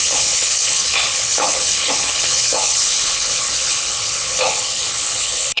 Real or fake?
fake